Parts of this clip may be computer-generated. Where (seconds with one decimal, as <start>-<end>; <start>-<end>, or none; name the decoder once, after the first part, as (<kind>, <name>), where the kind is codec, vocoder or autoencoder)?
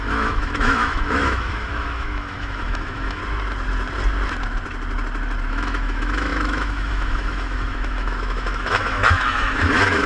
0.0-3.2 (autoencoder, DAC-VAE); 5.5-10.1